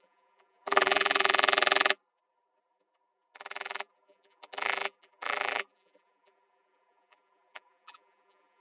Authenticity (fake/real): fake